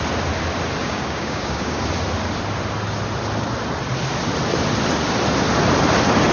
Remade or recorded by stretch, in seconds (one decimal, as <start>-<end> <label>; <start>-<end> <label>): 0.0-0.8 recorded; 0.8-1.8 remade; 1.8-6.3 recorded